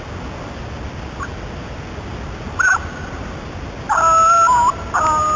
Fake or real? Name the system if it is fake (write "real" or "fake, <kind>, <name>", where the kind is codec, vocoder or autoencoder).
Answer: real